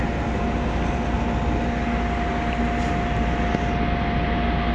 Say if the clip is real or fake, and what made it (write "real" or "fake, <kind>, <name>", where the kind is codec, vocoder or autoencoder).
real